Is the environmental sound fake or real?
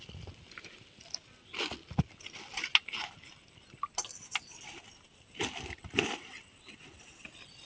real